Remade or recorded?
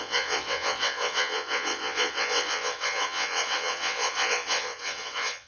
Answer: remade